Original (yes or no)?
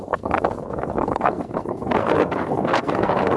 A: no